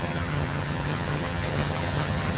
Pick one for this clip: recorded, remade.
remade